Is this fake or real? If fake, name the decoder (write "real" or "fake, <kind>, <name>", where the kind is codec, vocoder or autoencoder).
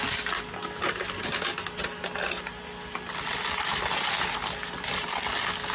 real